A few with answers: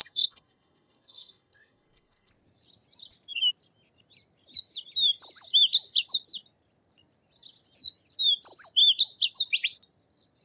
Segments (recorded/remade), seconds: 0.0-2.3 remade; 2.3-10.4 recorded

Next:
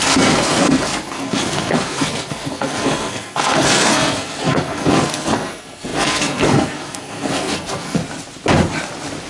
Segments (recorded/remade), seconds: 0.0-8.0 remade; 8.0-9.3 recorded

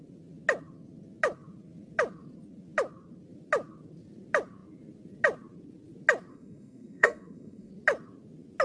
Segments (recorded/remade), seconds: 0.0-6.3 recorded; 6.3-7.7 remade; 7.7-8.6 recorded

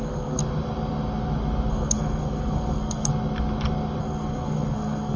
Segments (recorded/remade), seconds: 0.0-0.4 remade; 0.4-1.7 recorded; 1.7-3.1 remade; 3.1-4.0 recorded; 4.0-5.2 remade

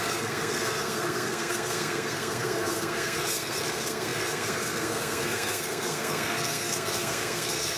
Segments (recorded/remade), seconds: 0.0-7.8 remade

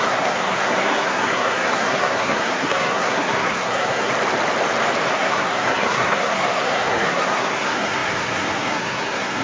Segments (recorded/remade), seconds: 0.0-4.1 remade; 4.1-5.1 recorded; 5.1-9.4 remade

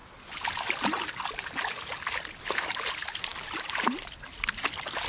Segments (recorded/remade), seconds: 0.0-5.1 recorded